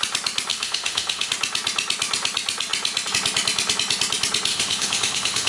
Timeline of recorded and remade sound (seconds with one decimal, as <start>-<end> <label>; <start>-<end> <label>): 0.0-0.5 recorded; 0.5-1.3 remade; 1.3-4.5 recorded; 4.5-5.5 remade